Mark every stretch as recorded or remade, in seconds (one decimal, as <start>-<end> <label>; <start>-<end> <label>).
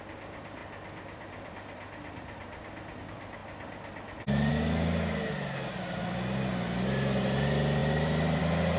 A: 0.0-0.6 recorded; 0.6-3.0 remade; 3.0-7.8 recorded; 7.8-8.4 remade; 8.4-8.8 recorded